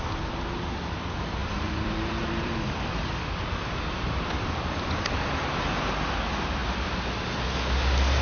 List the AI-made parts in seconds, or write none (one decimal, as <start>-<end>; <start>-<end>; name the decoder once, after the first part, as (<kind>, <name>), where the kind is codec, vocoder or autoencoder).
1.4-5.3 (vocoder, BigVGAN v2)